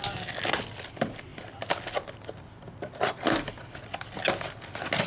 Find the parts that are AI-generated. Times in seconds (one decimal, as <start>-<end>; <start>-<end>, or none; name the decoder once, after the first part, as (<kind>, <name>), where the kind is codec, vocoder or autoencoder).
none